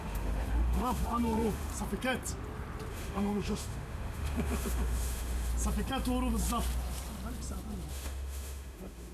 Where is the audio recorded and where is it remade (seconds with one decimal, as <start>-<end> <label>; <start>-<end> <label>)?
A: 0.0-1.7 remade; 1.7-2.9 recorded; 2.9-5.5 remade; 5.5-7.9 recorded; 7.9-9.1 remade